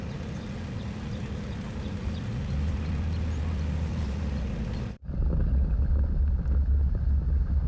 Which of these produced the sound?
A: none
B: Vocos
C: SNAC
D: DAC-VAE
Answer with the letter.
A